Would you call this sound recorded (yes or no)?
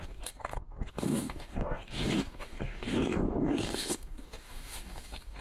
no